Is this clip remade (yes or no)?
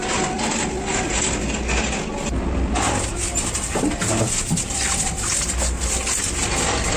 no